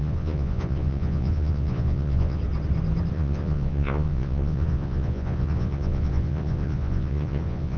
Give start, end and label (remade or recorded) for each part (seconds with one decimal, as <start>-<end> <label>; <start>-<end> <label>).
0.0-2.4 remade; 2.4-3.1 recorded; 3.1-7.8 remade